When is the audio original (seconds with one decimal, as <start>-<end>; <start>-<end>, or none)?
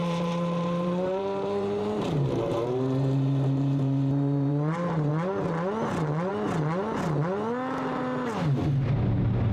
5.1-9.5